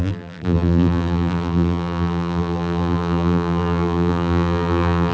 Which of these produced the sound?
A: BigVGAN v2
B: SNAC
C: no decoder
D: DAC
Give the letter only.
A